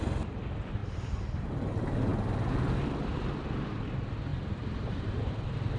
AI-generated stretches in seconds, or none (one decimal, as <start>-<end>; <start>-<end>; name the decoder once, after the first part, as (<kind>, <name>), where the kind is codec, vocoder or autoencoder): 0.8-1.5 (vocoder, BigVGAN v2); 4.3-5.3